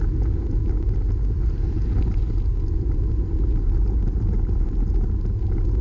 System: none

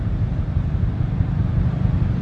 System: vocoder, BigVGAN v2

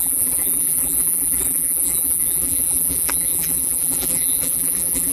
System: vocoder, BigVGAN v2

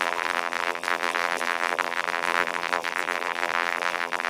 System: vocoder, BigVGAN v2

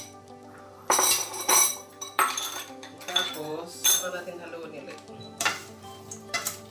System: vocoder, BigVGAN v2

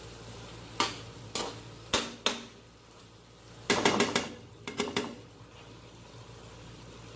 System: none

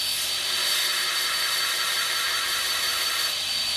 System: none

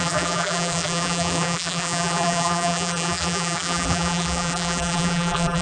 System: vocoder, BigVGAN v2